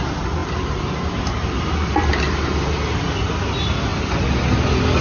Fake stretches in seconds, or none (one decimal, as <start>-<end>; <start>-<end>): none